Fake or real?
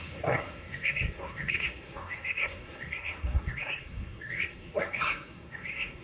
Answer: fake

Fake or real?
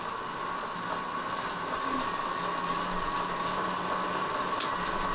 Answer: real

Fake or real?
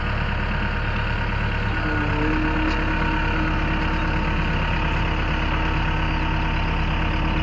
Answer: real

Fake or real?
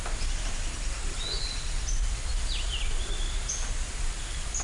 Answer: real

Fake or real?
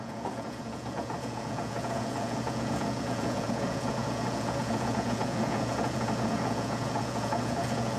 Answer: fake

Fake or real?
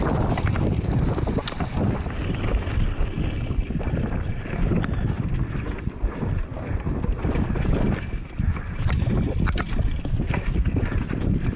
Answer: real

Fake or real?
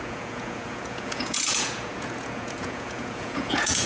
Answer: fake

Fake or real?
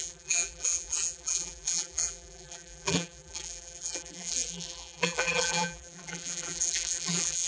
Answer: fake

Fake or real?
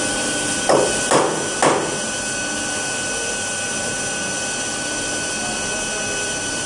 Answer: real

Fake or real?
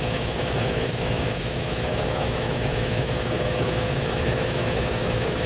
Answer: fake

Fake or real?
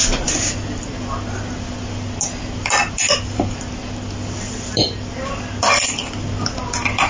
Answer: real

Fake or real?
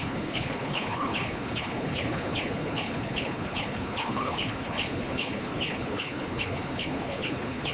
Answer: fake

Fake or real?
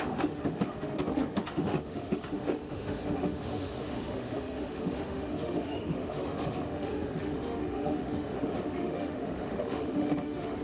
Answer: fake